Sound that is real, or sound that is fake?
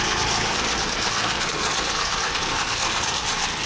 fake